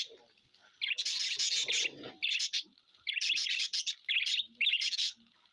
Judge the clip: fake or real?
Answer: real